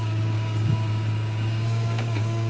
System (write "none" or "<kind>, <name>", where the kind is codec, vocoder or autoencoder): codec, DAC